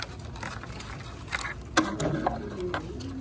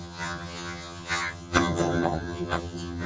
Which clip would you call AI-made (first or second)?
second